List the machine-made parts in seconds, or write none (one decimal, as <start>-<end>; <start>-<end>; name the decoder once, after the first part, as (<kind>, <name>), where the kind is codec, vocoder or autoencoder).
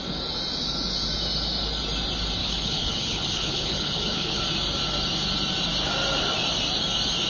2.4-4.4 (codec, HILCodec)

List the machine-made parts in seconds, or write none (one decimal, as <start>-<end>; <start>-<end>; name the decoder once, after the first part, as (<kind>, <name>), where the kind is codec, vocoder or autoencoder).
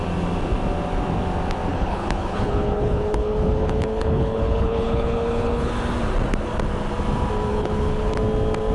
1.7-5.7 (codec, HILCodec); 7.5-8.1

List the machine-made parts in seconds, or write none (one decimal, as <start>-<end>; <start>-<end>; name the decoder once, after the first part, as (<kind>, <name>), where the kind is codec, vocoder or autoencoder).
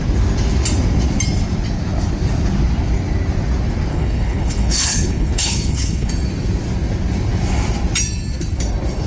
3.9-6.1 (codec, HILCodec)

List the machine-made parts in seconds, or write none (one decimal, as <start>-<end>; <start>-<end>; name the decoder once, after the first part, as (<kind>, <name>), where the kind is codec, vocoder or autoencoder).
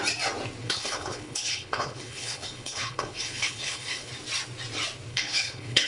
0.6-4.1 (codec, HILCodec); 5.1-5.9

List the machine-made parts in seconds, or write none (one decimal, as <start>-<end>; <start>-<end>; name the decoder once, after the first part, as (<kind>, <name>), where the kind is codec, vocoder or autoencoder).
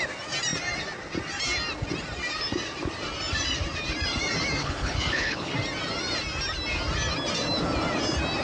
4.6-5.5 (codec, HILCodec)